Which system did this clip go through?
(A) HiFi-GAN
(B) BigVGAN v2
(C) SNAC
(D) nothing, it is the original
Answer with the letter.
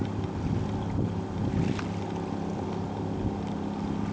D